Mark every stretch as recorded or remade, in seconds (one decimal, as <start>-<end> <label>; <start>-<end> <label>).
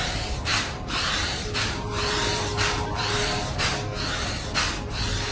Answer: 0.0-0.5 recorded; 0.5-3.7 remade; 3.7-5.3 recorded